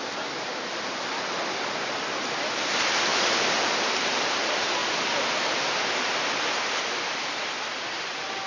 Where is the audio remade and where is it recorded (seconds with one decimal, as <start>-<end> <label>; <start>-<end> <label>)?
0.0-8.5 recorded